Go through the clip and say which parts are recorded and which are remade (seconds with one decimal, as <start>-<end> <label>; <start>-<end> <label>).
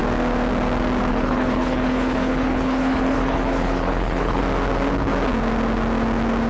0.0-1.1 recorded; 1.1-4.4 remade; 4.4-6.5 recorded